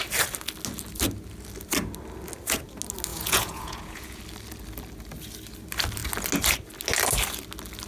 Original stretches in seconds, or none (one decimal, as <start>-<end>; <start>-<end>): 0.0-3.1; 4.2-7.9